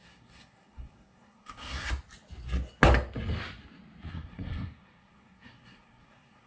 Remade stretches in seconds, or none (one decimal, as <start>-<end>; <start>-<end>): 0.0-1.9; 4.1-6.5